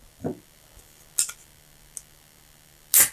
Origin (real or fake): real